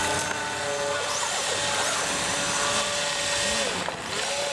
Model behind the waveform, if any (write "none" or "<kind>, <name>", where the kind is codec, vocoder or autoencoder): none